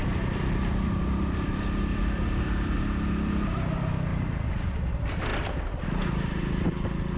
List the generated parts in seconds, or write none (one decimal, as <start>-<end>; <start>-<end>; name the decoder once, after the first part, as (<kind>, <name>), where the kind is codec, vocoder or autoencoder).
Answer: 0.0-2.8 (vocoder, BigVGAN v2); 4.1-4.7